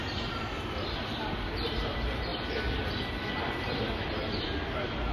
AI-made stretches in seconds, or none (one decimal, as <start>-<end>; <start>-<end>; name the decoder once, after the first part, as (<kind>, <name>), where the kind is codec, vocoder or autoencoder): none